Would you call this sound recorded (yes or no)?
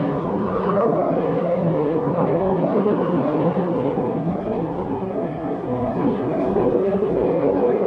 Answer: no